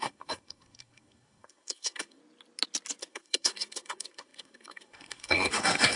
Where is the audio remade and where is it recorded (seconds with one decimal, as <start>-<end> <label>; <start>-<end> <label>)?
0.0-2.2 remade; 2.2-3.0 recorded; 3.0-6.0 remade